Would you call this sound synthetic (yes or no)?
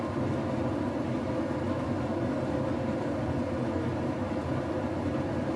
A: no